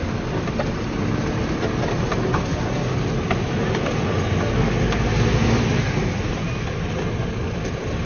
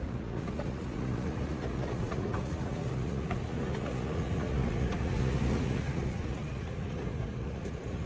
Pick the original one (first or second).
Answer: first